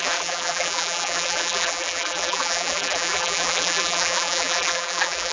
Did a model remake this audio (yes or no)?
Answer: yes